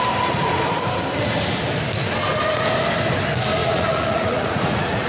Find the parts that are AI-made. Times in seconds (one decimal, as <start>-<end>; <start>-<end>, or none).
3.6-5.1